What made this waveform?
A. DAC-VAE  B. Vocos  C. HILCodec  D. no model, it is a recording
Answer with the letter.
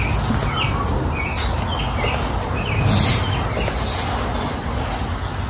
D